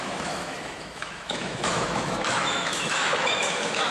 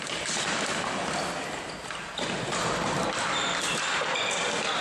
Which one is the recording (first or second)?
second